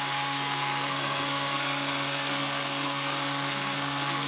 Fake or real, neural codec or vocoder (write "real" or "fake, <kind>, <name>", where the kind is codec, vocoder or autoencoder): fake, codec, SNAC